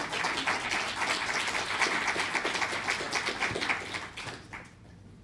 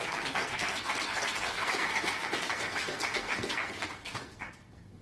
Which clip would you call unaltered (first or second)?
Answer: first